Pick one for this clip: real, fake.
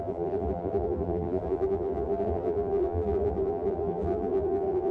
fake